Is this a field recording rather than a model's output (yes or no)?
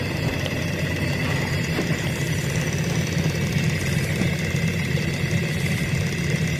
yes